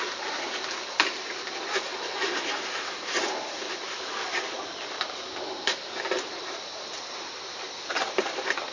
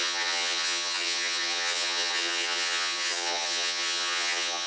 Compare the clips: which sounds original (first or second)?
first